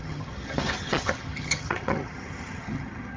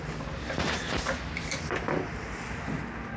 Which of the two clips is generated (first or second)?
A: first